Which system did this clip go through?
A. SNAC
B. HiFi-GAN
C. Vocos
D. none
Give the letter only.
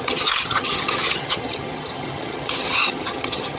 B